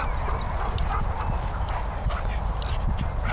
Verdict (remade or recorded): recorded